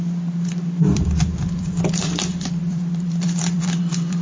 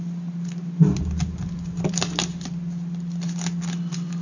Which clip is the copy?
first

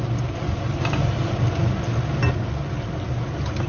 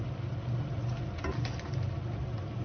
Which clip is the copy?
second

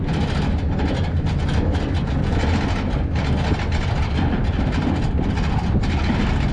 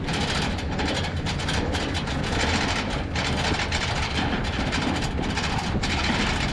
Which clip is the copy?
second